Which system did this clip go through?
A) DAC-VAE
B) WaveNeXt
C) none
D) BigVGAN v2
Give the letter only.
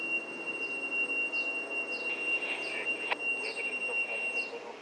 C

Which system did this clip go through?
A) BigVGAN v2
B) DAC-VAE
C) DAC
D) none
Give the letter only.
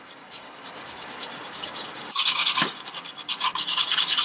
C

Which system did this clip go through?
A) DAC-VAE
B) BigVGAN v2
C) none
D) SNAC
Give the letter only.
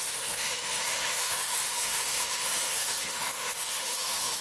A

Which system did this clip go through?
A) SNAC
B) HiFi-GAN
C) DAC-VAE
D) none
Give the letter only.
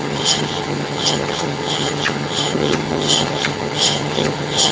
B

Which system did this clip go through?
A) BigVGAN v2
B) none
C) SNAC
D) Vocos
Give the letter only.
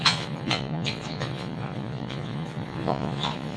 D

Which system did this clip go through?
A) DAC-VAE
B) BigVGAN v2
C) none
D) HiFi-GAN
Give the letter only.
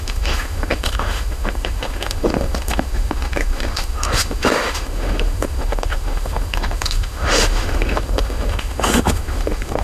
A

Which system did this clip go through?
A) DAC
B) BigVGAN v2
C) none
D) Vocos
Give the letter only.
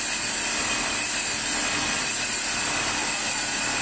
C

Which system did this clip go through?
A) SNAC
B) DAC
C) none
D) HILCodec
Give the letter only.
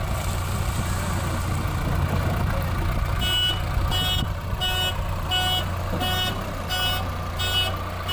C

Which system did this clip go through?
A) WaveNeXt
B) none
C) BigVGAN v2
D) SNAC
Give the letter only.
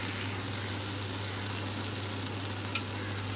B